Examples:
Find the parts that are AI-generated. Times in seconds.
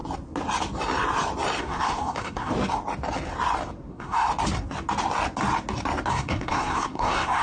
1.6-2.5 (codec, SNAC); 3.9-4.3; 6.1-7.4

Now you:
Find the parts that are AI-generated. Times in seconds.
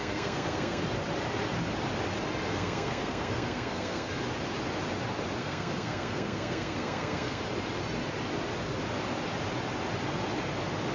0.0-0.8 (codec, SNAC); 2.5-4.1; 5.4-7.4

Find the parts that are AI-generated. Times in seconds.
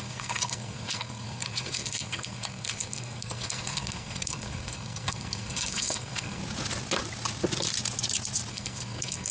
0.0-6.4 (codec, SNAC); 8.5-9.3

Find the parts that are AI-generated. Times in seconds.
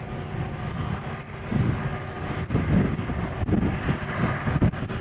none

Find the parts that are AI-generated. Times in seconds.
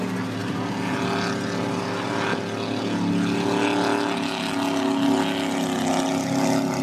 none